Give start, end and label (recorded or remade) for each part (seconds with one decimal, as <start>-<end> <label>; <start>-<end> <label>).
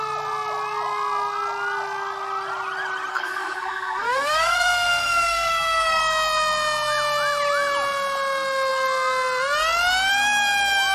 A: 0.0-3.1 recorded; 3.1-6.0 remade; 6.0-10.9 recorded